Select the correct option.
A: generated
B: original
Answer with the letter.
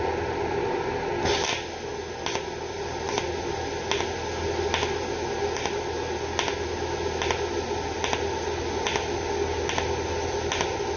B